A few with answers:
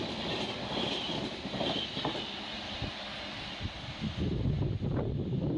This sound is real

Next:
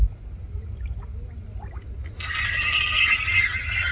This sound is real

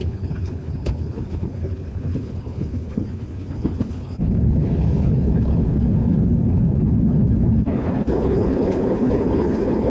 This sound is fake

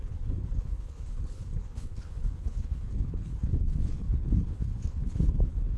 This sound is fake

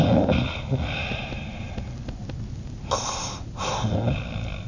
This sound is real